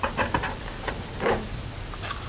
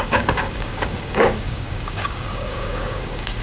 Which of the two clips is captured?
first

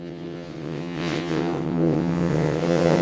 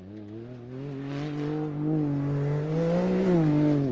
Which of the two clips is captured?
second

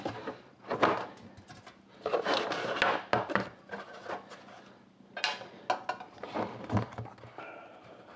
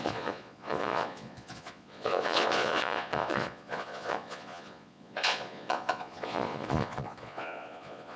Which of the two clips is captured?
first